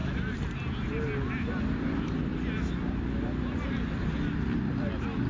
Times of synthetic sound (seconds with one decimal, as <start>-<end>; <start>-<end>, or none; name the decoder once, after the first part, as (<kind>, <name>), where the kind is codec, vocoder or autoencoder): 1.5-2.3 (vocoder, BigVGAN v2)